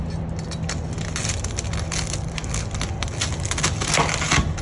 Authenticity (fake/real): real